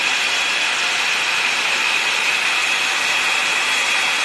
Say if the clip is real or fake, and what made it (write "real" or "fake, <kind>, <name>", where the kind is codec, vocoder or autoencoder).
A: real